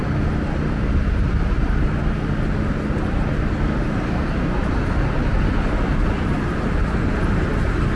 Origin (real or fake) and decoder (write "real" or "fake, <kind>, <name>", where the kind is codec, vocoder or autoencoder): real